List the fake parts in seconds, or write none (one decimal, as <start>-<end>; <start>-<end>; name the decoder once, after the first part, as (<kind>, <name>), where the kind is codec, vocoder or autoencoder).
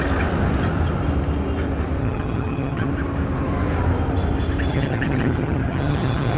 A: 2.0-2.9 (vocoder, HiFi-GAN); 4.7-6.4